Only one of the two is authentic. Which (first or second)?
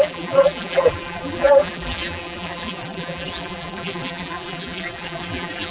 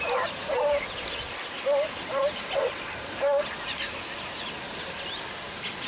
second